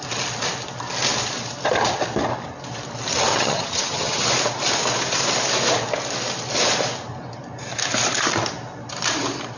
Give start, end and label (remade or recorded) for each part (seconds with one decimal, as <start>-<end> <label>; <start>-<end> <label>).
0.0-3.3 recorded; 3.3-4.3 remade; 4.3-9.6 recorded